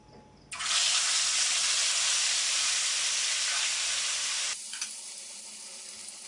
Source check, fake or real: real